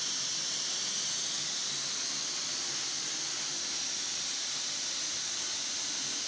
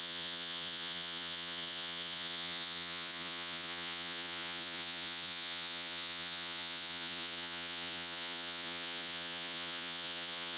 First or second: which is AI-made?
second